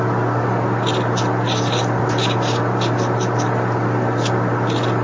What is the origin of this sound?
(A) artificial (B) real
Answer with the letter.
B